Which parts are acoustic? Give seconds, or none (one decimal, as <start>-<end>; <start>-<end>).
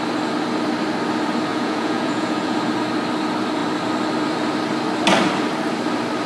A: 0.0-1.5; 2.6-6.3